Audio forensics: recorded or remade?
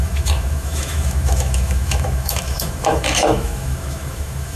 remade